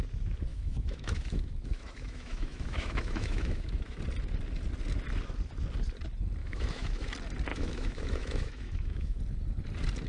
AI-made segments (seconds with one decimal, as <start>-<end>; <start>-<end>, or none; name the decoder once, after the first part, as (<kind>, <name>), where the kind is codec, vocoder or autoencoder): 0.5-4.0 (autoencoder, DAC-VAE); 6.4-7.1; 7.5-9.2